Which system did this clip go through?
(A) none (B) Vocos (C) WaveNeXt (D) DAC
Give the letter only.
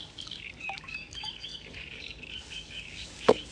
D